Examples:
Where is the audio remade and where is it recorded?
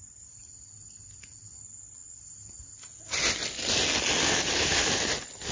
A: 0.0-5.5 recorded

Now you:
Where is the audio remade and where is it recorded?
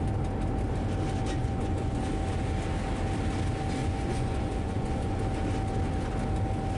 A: 0.0-1.4 recorded; 1.4-2.0 remade; 2.0-3.8 recorded; 3.8-5.2 remade; 5.2-6.8 recorded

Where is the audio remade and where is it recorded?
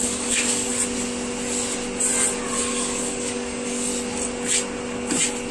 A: 0.0-0.7 remade; 0.7-2.6 recorded; 2.6-3.9 remade; 3.9-5.5 recorded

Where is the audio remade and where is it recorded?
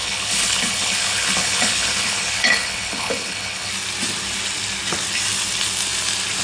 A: 0.0-3.7 remade; 3.7-6.4 recorded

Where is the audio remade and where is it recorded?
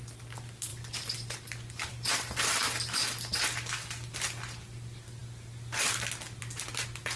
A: 0.0-7.2 recorded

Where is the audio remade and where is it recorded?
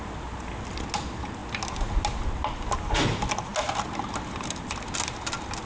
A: 0.0-5.7 recorded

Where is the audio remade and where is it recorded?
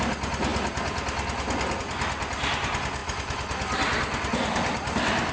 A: 0.0-5.3 recorded